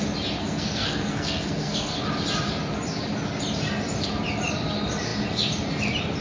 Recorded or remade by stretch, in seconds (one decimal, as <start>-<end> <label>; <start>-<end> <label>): 0.0-0.4 recorded; 0.4-2.0 remade; 2.0-6.2 recorded